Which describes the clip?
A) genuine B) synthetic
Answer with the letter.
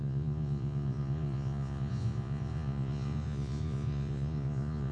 B